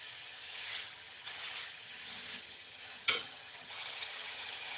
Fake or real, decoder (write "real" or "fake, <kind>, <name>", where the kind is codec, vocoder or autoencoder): fake, vocoder, HiFi-GAN